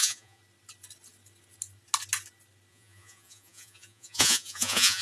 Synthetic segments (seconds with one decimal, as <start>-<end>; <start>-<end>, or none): 0.0-0.4; 2.7-5.0